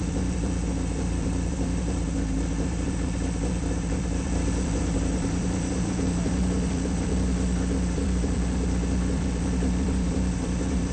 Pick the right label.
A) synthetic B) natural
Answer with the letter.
A